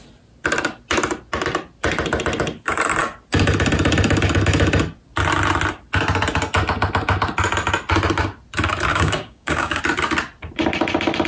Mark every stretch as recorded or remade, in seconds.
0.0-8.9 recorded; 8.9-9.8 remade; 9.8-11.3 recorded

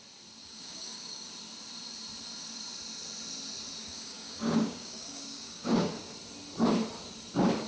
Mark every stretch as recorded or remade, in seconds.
0.0-0.4 recorded; 0.4-1.3 remade; 1.3-3.8 recorded; 3.8-5.9 remade; 5.9-7.7 recorded